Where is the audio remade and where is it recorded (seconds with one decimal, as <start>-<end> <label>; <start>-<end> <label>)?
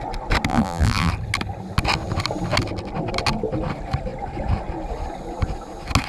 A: 0.0-0.5 recorded; 0.5-1.1 remade; 1.1-6.1 recorded